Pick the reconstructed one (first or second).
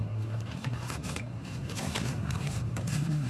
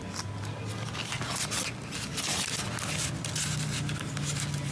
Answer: first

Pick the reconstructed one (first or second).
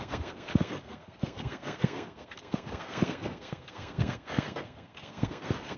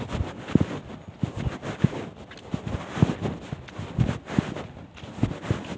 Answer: first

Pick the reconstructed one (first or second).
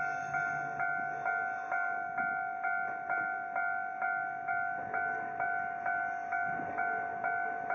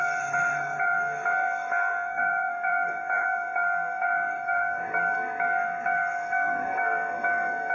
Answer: second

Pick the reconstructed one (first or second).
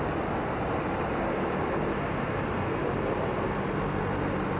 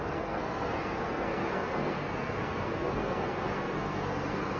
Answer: second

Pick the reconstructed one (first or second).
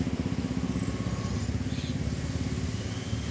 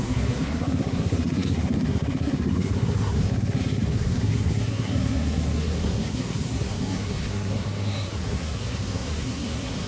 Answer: second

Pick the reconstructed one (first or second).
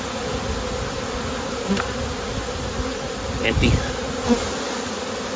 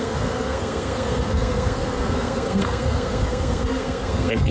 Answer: second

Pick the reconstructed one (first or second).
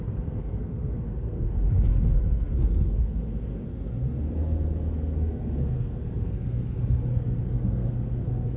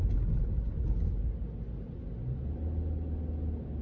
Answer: first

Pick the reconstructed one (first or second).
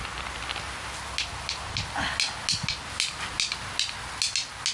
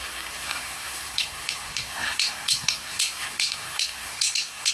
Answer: second